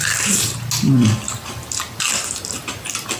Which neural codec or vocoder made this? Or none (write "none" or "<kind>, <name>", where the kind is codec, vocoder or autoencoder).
none